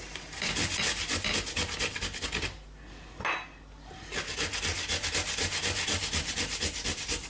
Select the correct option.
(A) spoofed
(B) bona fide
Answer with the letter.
B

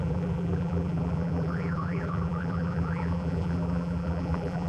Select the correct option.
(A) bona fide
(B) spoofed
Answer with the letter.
B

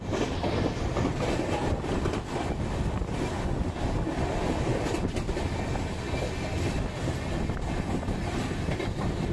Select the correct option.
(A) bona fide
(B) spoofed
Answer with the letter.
A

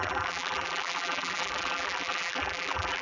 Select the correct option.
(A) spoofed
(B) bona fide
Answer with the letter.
A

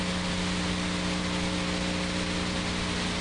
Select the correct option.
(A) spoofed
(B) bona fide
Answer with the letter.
B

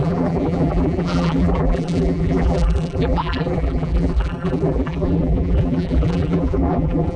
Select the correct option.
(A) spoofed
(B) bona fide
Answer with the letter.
A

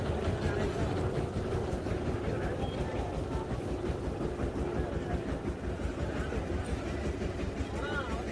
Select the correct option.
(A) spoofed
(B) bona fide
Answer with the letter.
B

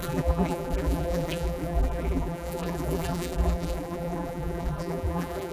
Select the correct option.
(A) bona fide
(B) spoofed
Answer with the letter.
B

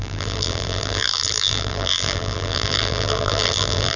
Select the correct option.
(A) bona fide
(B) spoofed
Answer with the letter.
B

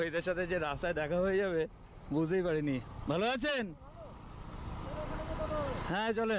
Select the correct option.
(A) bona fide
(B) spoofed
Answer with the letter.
A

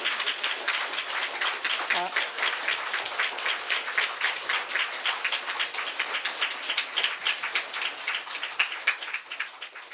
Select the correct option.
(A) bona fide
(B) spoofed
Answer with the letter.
A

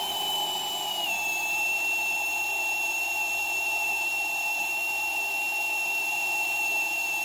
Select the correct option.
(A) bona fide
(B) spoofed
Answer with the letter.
B